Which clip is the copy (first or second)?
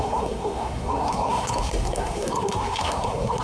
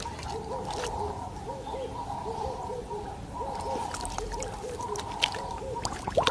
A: first